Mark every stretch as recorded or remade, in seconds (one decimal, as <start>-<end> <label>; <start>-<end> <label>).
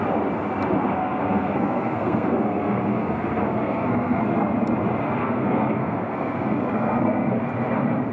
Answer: 0.0-1.0 recorded; 1.0-4.2 remade; 4.2-5.2 recorded; 5.2-7.4 remade; 7.4-8.1 recorded